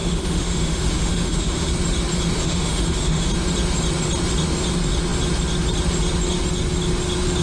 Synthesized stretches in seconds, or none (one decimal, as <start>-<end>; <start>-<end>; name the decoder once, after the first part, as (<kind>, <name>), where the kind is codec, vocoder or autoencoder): 0.0-1.7 (autoencoder, DAC-VAE); 2.4-3.3